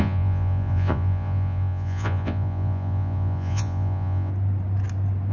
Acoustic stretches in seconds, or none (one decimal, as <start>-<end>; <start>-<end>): 4.3-5.3